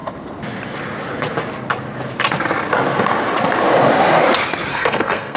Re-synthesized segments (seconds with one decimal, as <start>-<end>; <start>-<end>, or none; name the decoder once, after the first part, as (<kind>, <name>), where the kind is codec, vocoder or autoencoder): 4.7-5.4 (codec, SNAC)